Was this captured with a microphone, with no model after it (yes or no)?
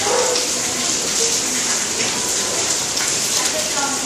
yes